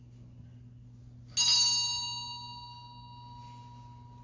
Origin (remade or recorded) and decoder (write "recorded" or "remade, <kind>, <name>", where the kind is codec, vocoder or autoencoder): recorded